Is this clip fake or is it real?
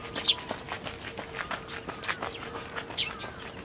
real